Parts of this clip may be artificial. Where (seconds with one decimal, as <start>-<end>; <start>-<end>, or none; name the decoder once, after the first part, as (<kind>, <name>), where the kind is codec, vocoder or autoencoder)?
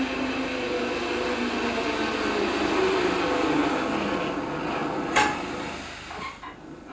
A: none